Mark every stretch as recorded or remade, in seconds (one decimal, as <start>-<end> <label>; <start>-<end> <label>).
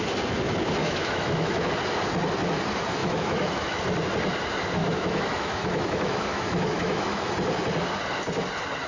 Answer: 0.0-0.8 recorded; 0.8-1.7 remade; 1.7-3.0 recorded; 3.0-3.8 remade; 3.8-4.8 recorded; 4.8-7.3 remade; 7.3-8.9 recorded